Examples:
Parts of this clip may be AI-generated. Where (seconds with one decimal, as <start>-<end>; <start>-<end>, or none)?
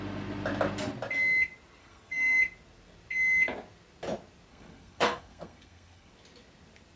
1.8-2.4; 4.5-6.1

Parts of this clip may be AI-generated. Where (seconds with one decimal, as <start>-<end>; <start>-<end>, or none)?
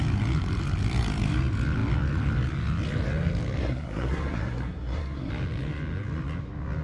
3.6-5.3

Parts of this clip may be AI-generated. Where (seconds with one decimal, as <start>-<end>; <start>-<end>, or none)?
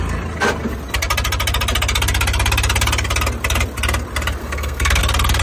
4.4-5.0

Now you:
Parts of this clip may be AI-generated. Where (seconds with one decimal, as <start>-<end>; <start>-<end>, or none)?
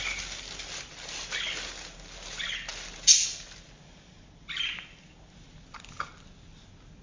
none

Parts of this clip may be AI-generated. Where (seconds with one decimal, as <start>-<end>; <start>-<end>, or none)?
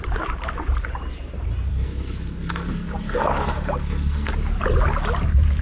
1.7-4.3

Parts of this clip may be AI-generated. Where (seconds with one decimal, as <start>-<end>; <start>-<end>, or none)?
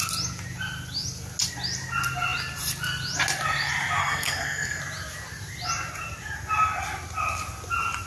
4.0-4.8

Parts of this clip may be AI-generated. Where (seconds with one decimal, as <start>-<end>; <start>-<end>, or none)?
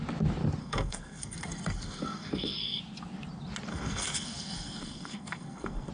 0.6-2.8; 3.7-5.9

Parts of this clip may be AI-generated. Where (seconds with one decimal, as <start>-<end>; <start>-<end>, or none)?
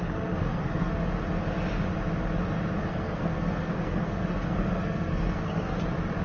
0.0-1.0; 2.8-5.8